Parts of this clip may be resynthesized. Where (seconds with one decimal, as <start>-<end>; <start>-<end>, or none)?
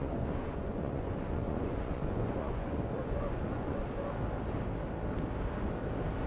0.0-3.8